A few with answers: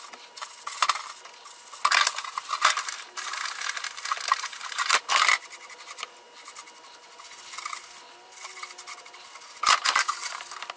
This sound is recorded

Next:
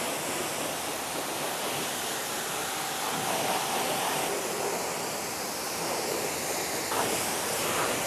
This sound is recorded